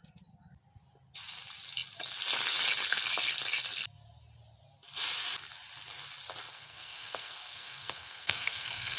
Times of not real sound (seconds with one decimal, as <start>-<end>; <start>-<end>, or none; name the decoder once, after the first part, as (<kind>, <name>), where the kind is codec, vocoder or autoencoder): 6.5-9.0 (codec, SNAC)